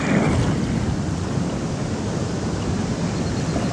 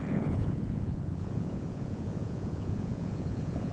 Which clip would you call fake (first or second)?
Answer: second